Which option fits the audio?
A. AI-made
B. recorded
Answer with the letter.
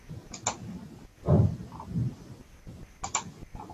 B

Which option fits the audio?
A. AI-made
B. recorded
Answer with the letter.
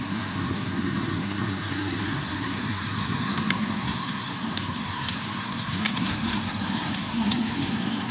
A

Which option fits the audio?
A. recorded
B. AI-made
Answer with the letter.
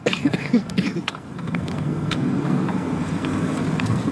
B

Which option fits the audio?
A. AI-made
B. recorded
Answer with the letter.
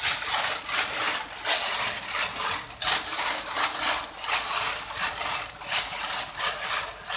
B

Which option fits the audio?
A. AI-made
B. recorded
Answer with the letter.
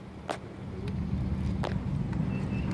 B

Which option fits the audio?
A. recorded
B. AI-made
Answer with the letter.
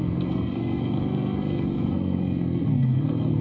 B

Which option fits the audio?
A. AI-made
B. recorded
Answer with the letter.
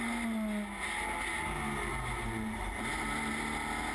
B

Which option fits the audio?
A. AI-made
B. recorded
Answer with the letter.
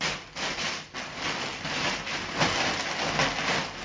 B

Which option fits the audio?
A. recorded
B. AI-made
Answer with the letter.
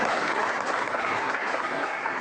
B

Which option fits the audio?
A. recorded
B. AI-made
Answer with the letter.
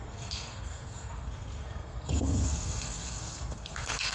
B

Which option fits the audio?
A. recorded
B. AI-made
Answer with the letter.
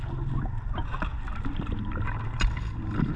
A